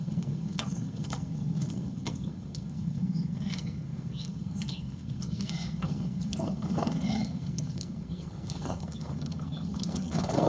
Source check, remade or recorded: remade